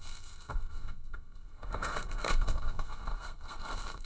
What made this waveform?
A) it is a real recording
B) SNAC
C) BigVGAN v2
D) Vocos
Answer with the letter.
B